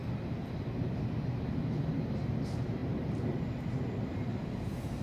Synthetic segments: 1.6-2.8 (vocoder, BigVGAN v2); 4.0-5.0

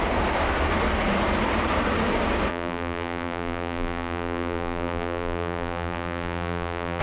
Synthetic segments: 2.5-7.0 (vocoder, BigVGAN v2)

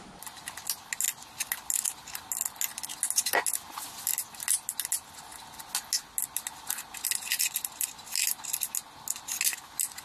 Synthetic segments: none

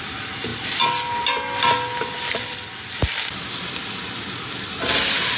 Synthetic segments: none

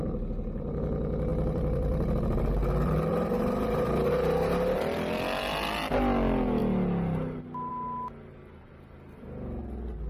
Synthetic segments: 1.3-4.1 (vocoder, BigVGAN v2)